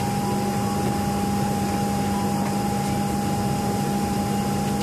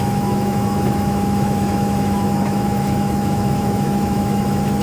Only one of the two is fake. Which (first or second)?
second